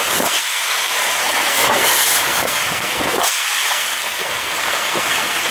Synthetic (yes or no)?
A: yes